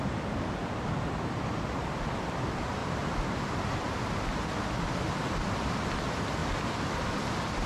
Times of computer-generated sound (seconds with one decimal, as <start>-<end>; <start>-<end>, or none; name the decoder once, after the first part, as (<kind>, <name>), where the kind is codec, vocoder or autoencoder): 2.8-4.0 (vocoder, BigVGAN v2); 6.4-7.7